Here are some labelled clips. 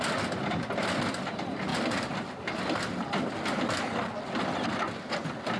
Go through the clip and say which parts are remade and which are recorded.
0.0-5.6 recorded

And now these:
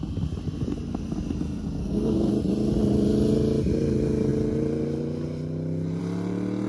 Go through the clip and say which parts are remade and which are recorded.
0.0-1.8 recorded; 1.8-2.3 remade; 2.3-6.7 recorded